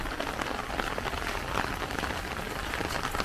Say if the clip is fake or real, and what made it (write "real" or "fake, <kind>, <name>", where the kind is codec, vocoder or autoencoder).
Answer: real